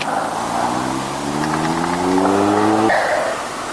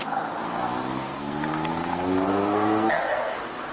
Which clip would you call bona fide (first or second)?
first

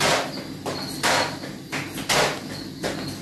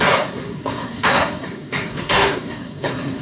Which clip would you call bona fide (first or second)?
first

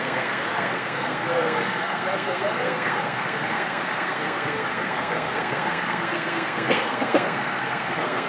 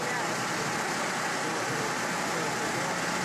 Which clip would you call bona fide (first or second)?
second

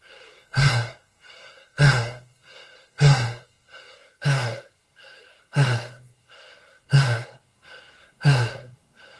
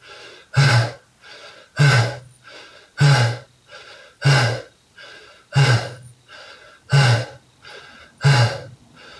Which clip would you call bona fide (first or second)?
second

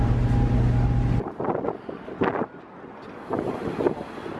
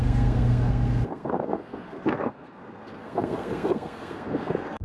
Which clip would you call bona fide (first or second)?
first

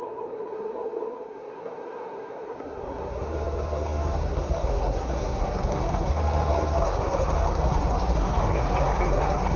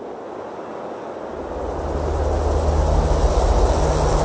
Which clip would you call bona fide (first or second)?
second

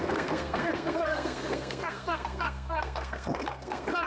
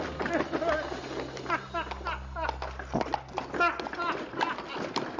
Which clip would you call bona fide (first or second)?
second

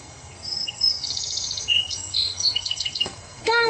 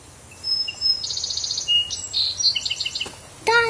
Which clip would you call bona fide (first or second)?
second